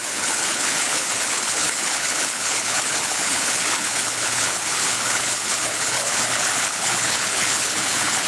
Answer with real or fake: fake